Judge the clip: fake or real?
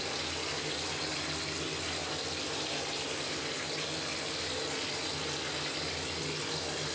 real